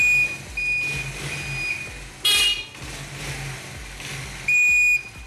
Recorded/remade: recorded